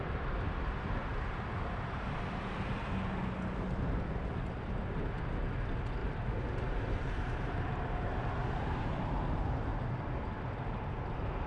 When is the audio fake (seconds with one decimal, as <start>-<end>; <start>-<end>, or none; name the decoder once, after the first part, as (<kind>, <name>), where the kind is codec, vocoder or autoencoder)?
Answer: 1.1-2.4 (vocoder, BigVGAN v2); 6.0-9.0